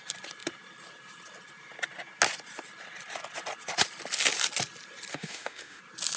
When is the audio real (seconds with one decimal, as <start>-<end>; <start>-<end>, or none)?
0.0-5.1; 5.8-6.2